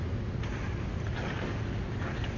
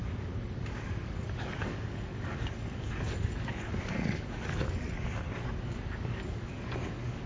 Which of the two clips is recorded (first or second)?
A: first